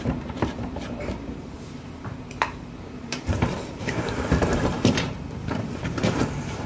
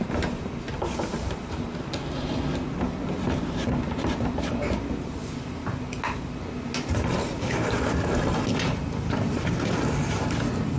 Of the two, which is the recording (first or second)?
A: second